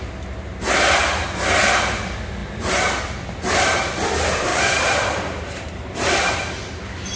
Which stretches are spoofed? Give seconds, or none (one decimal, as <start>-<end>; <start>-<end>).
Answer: 2.4-3.0; 4.5-6.5